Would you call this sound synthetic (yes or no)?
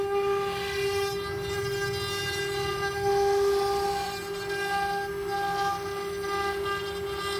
no